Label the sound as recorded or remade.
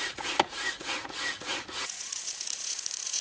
remade